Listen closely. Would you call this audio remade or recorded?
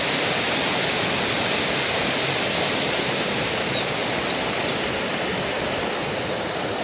recorded